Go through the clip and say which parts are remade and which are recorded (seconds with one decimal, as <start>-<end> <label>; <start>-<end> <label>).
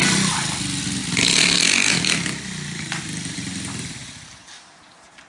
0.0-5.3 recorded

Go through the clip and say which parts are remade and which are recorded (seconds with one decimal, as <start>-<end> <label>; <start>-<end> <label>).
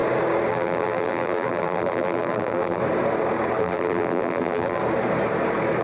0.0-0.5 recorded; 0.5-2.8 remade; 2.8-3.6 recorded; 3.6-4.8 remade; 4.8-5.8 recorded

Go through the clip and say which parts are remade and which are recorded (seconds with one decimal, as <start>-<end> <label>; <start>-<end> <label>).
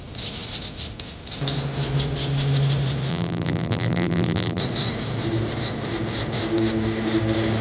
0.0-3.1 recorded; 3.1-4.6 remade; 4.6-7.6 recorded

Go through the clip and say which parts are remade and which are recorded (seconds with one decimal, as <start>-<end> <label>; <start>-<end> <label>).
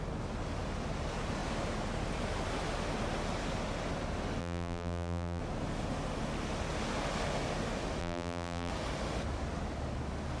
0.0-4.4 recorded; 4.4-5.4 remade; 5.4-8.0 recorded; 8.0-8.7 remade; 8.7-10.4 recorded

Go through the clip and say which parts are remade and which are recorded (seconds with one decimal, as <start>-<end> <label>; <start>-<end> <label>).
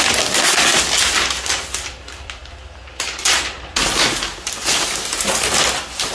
0.0-6.1 recorded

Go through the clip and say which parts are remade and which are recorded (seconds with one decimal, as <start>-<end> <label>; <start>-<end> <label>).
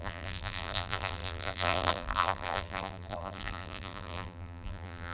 0.0-5.1 remade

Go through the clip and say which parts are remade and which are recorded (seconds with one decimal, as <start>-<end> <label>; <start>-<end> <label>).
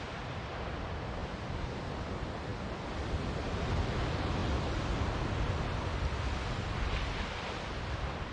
0.0-1.2 recorded; 1.2-1.8 remade; 1.8-2.5 recorded; 2.5-4.0 remade; 4.0-8.3 recorded